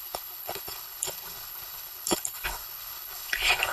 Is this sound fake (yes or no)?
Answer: yes